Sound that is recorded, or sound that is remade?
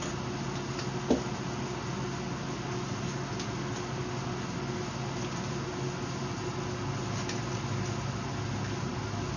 recorded